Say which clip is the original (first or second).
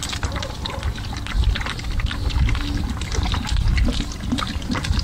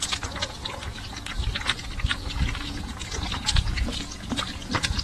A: first